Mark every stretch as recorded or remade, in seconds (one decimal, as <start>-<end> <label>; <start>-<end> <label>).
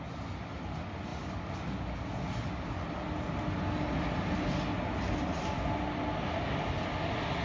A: 0.0-7.4 recorded